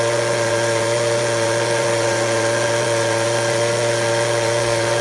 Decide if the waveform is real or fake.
fake